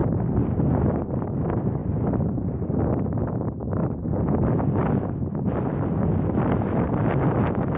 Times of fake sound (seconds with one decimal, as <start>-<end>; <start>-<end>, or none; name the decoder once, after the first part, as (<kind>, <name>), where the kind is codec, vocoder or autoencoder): 0.0-0.8 (vocoder, BigVGAN v2); 1.8-3.2; 3.8-4.7